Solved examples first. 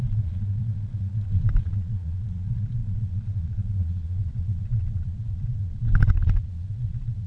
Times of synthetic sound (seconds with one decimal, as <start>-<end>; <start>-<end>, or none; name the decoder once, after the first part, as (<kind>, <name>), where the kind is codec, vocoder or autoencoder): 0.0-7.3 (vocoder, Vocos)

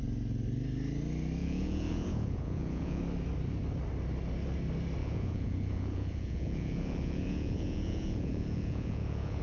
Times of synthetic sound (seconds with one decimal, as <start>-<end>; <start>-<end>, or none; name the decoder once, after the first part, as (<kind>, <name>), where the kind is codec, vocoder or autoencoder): 1.4-3.0 (vocoder, Vocos); 5.0-9.4

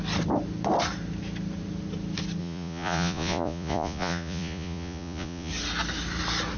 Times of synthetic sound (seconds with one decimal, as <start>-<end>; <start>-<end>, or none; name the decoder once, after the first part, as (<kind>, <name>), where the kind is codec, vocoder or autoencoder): 2.4-5.5 (vocoder, Vocos)